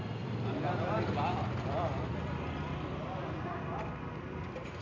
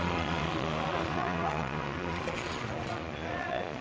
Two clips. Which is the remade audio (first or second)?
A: second